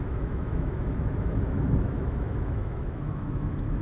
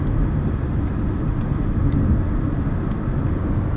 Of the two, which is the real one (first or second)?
second